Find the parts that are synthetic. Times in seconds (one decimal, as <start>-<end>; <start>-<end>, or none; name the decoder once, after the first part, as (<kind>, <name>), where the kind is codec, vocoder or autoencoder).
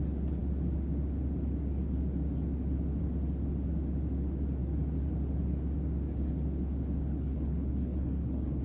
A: 7.1-8.6 (codec, HILCodec)